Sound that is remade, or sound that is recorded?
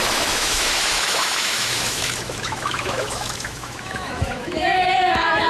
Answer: remade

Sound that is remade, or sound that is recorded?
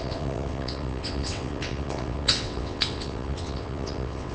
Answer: remade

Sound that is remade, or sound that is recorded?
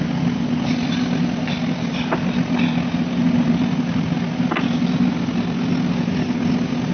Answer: recorded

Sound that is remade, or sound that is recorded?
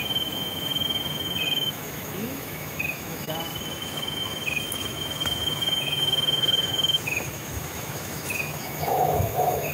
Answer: remade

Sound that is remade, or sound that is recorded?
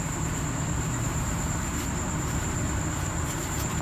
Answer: remade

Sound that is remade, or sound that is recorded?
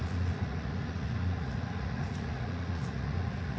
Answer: remade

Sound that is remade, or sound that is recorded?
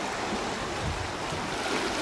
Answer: recorded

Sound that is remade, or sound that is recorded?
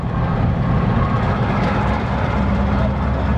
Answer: recorded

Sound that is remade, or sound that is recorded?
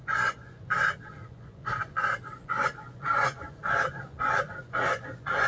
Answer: remade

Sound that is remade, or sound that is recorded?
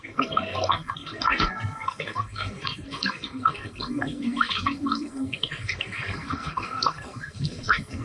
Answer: remade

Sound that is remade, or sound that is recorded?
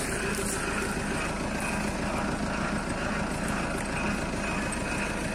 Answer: recorded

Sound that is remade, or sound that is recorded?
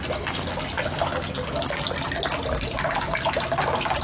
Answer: recorded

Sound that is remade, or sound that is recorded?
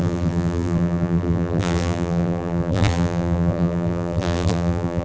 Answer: remade